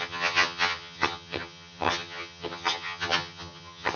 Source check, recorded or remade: remade